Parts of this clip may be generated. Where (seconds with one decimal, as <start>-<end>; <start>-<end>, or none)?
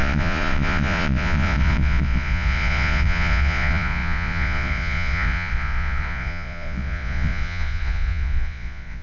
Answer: 0.0-9.0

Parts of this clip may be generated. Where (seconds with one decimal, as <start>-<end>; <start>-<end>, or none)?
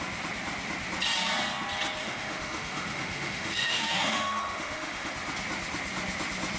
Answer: 2.0-5.1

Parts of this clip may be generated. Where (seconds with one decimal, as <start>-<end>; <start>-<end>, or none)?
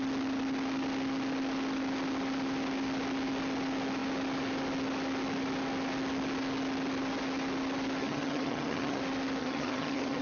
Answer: 8.0-9.0; 9.4-10.2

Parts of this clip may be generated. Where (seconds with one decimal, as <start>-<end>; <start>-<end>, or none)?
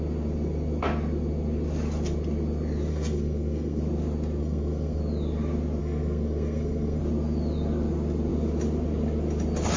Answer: 2.9-3.8; 4.4-5.0; 5.8-7.0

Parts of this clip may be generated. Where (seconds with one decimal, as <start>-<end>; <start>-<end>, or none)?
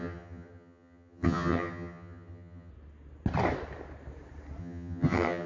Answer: 0.0-2.7; 4.6-5.5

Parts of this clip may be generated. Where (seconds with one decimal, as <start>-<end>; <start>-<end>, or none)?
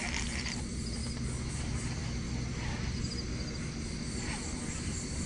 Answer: 0.0-1.0; 1.5-2.0; 4.2-5.3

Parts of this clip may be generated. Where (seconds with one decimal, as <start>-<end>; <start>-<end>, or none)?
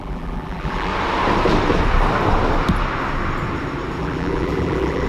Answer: 0.0-0.9; 4.0-5.1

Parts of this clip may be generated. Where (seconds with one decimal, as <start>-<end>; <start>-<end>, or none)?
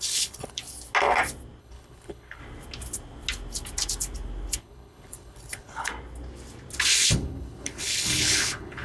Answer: 0.0-0.6; 1.6-2.4; 4.6-5.9; 6.9-8.8